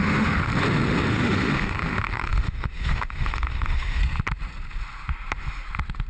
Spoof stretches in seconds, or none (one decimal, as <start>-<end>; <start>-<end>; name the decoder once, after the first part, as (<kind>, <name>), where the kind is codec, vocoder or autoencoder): 0.0-0.5 (autoencoder, DAC-VAE); 1.1-4.0